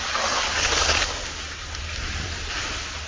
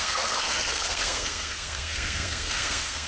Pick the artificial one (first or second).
second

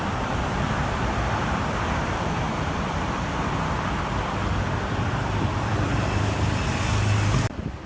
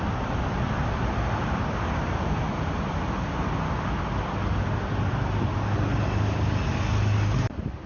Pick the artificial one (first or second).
first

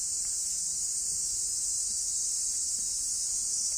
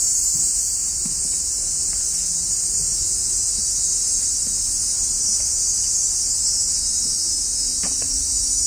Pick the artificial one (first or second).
first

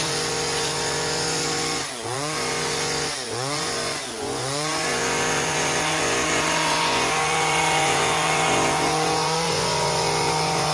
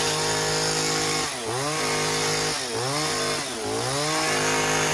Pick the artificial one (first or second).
first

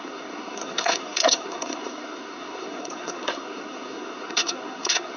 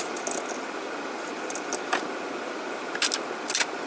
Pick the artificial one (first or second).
first